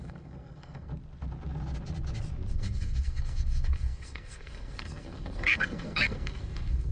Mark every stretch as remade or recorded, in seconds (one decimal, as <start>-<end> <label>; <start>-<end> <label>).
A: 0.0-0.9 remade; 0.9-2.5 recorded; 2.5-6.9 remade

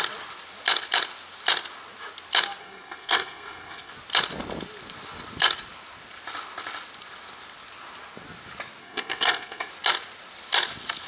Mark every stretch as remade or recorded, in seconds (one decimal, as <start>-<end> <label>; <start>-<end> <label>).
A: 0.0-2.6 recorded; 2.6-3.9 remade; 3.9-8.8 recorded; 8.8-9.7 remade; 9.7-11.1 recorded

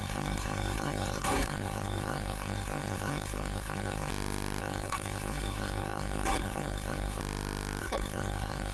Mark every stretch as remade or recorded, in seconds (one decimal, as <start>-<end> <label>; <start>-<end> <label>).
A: 0.0-4.1 remade; 4.1-4.6 recorded; 4.6-7.2 remade; 7.2-7.8 recorded; 7.8-8.7 remade